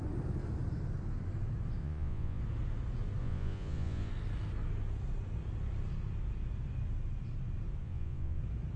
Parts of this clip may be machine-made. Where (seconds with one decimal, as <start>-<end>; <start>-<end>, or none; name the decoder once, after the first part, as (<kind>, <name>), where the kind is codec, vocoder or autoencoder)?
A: 1.8-2.4 (vocoder, Vocos); 3.2-4.1; 7.8-8.4